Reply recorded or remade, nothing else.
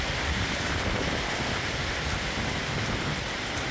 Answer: recorded